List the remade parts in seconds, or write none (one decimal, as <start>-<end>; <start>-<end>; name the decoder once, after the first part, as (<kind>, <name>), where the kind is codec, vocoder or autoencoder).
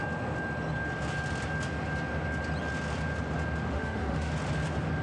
3.7-4.3 (autoencoder, DAC-VAE)